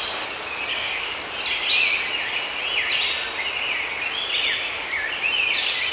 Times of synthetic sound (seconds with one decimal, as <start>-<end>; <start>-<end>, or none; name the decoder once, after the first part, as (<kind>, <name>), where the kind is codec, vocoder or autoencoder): 0.7-1.3 (codec, DAC)